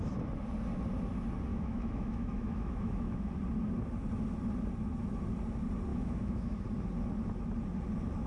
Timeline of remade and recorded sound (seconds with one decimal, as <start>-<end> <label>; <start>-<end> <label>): 0.0-1.5 recorded; 1.5-3.3 remade; 3.3-5.9 recorded; 5.9-6.6 remade; 6.6-8.3 recorded